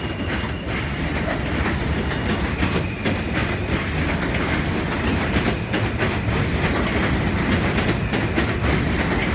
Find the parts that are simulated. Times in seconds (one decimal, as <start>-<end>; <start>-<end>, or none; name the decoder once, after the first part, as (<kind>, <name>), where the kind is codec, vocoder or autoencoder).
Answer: none